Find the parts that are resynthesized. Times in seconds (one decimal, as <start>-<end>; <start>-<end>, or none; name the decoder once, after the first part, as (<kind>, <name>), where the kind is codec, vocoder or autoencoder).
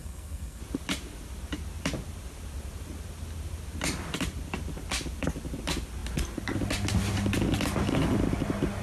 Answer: 0.0-0.6 (codec, SNAC)